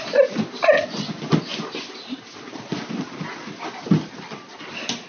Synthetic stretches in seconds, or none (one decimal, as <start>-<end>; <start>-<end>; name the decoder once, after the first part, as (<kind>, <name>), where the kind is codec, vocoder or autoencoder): none